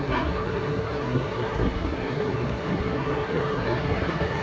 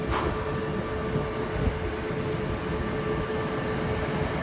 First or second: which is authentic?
second